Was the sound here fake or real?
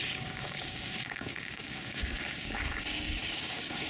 fake